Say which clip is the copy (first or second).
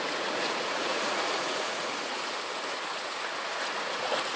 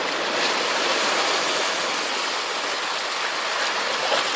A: first